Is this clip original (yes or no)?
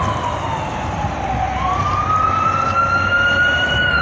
yes